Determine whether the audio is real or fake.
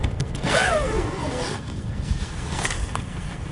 fake